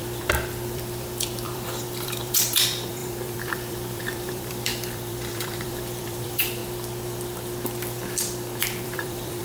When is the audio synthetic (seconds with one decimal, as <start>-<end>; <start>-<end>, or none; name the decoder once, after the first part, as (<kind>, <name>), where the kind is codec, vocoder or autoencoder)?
0.0-6.6 (vocoder, BigVGAN v2); 8.6-9.4